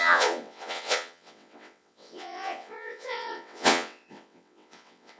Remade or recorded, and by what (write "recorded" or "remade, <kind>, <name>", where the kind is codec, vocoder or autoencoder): remade, vocoder, WaveNeXt